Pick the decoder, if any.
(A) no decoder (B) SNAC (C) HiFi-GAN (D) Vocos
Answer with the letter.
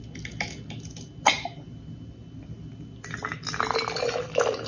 A